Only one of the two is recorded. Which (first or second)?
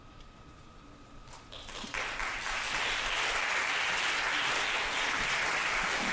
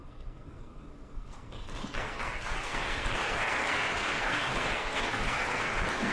first